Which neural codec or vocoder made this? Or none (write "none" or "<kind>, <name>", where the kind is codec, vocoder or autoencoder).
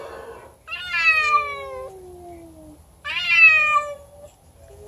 none